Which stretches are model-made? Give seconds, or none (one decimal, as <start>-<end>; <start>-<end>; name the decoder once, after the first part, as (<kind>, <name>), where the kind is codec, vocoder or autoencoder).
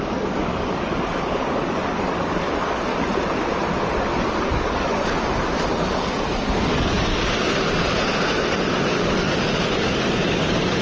0.0-2.9 (codec, DAC); 4.3-7.1; 8.7-10.8